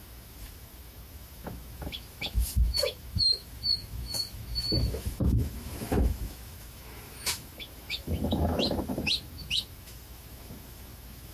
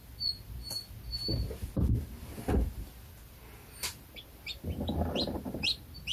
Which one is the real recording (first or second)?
second